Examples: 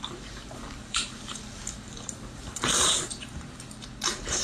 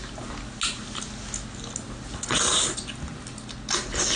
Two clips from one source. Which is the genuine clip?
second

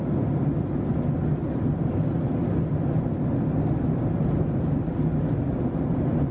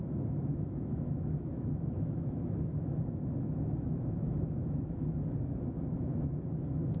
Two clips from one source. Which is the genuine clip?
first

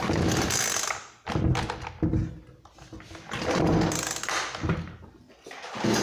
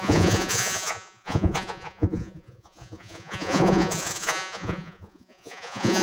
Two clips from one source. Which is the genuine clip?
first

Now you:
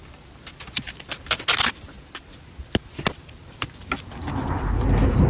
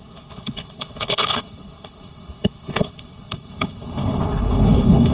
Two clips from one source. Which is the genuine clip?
first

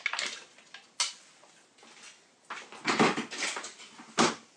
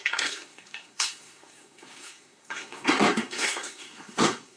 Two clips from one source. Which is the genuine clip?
first